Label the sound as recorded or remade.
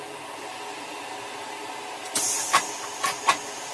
recorded